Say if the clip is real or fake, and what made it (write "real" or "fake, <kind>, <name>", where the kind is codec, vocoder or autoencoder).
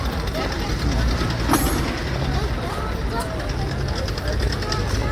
real